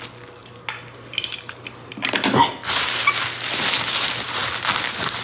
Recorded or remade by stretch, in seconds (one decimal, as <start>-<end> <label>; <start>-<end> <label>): 0.0-5.2 recorded